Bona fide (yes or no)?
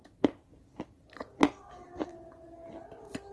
yes